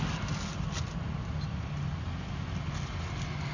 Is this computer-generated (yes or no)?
no